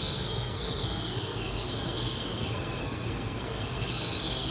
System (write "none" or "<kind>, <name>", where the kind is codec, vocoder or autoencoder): codec, SNAC